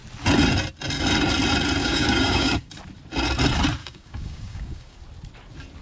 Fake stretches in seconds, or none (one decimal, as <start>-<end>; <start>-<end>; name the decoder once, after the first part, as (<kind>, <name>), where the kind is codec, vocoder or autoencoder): 1.8-2.7 (codec, DAC); 3.8-5.0